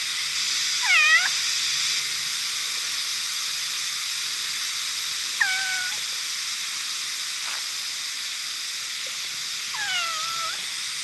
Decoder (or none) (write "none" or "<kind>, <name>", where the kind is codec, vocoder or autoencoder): none